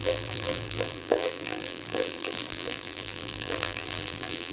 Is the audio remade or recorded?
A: remade